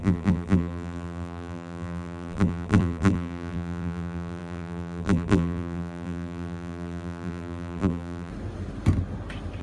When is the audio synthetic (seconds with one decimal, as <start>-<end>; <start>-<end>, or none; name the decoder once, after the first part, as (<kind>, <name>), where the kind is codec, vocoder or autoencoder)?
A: 0.0-8.3 (vocoder, BigVGAN v2)